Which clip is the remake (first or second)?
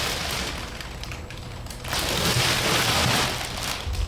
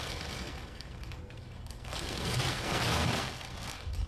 second